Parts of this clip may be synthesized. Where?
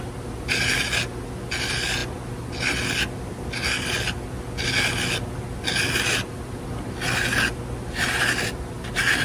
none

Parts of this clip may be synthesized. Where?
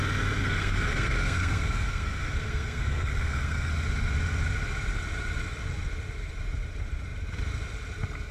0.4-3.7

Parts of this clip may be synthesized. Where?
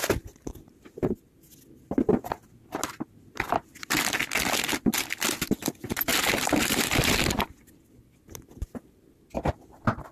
none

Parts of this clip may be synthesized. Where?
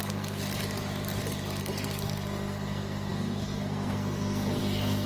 0.0-0.4; 1.6-5.1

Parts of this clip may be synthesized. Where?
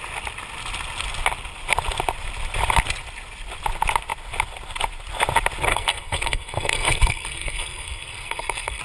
5.7-8.8